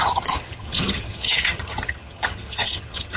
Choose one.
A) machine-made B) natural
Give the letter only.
A